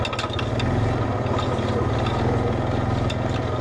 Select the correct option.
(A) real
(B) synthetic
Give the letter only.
A